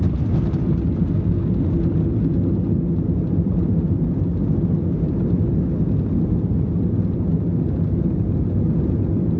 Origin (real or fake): real